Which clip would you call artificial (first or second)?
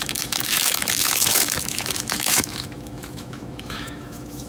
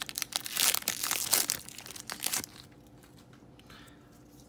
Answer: first